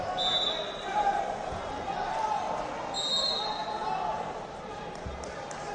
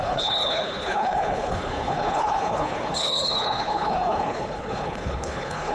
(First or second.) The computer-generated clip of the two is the second